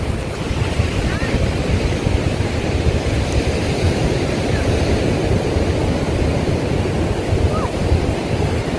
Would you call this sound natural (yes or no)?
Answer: yes